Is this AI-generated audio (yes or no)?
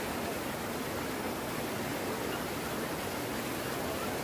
no